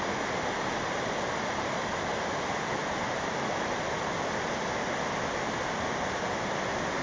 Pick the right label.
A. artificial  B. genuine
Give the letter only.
B